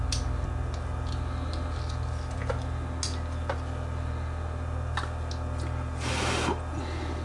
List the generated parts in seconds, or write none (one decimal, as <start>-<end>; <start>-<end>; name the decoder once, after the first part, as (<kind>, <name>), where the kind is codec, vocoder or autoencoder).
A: none